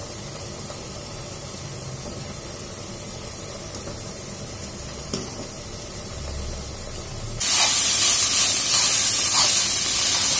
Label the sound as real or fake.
real